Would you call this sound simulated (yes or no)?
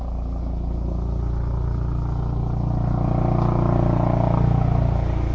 no